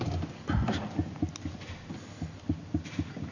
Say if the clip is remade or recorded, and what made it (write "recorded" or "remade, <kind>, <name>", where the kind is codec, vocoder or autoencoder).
recorded